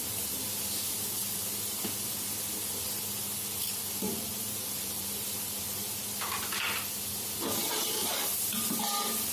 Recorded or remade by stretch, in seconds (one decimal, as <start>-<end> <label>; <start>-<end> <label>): 0.0-3.7 recorded; 3.7-6.4 remade; 6.4-9.3 recorded